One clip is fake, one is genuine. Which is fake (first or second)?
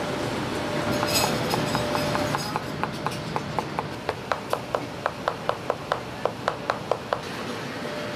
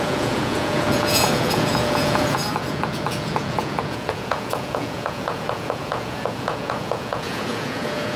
second